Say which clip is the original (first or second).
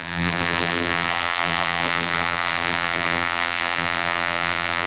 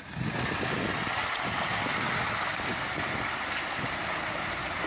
second